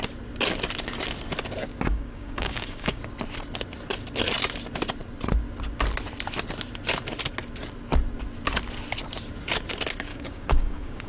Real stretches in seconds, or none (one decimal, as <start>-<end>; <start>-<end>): 0.0-1.9; 3.0-10.1